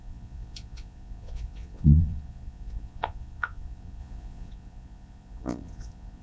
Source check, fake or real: fake